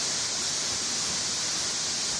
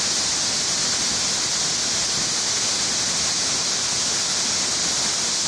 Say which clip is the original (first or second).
second